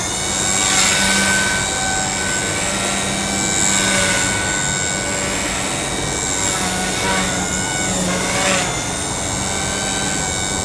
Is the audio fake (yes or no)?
no